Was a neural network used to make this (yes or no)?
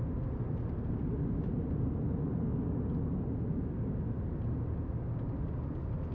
no